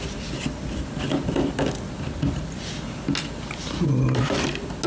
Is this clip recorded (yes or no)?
yes